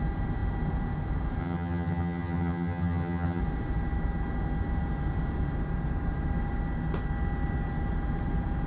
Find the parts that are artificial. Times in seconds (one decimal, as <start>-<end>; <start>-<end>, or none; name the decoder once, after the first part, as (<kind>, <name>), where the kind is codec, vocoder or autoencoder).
1.4-3.4 (vocoder, HiFi-GAN)